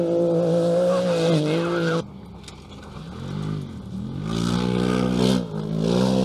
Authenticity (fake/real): real